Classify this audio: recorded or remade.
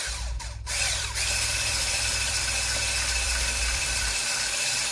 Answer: remade